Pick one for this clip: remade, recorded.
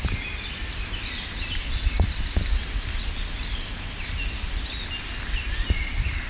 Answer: recorded